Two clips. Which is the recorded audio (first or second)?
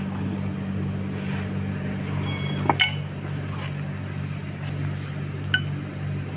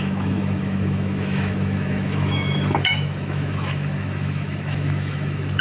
first